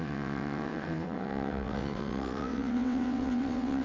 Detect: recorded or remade remade